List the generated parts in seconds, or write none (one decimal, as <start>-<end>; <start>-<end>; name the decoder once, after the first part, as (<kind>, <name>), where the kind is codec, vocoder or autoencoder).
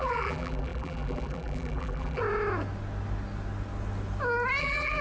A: 0.0-2.2 (vocoder, BigVGAN v2); 4.6-5.0